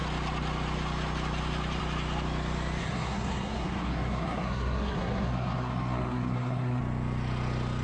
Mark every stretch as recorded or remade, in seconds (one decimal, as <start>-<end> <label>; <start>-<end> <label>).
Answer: 0.0-2.8 recorded; 2.8-6.8 remade; 6.8-7.8 recorded